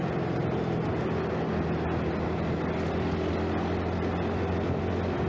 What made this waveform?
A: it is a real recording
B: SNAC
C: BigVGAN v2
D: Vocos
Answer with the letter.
A